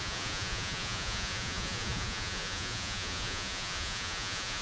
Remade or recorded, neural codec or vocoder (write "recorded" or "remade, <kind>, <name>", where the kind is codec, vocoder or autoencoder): remade, vocoder, Vocos